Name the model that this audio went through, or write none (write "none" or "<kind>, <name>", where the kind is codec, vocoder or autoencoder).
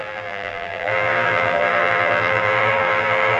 vocoder, BigVGAN v2